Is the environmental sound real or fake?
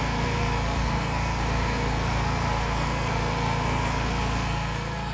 fake